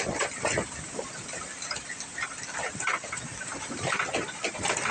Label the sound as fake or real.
real